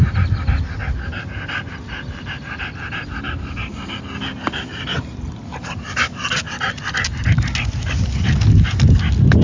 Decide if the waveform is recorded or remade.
recorded